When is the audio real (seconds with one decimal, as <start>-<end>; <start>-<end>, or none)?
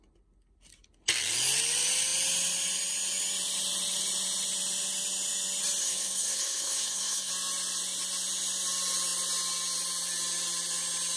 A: 0.0-5.8; 7.3-11.2